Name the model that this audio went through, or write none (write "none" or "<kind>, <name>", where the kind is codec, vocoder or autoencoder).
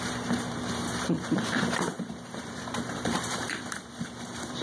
vocoder, BigVGAN v2